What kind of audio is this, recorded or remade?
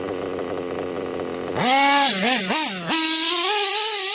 recorded